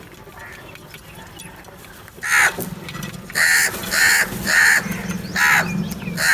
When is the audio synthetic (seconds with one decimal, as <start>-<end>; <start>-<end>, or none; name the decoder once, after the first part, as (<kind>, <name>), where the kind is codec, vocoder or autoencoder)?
none